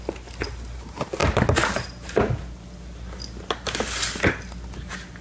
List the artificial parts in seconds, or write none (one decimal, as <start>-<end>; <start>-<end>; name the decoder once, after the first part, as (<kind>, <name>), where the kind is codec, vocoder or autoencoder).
none